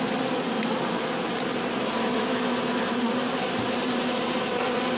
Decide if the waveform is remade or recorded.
recorded